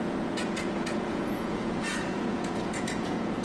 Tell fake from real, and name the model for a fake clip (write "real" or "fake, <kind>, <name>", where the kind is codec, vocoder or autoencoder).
fake, vocoder, Vocos